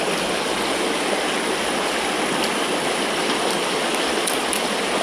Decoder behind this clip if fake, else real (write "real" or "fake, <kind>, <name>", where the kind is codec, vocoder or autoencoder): real